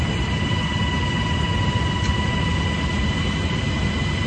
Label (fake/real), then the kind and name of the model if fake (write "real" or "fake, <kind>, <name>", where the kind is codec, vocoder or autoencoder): real